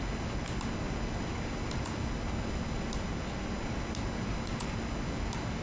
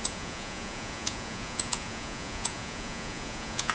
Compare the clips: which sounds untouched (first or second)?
first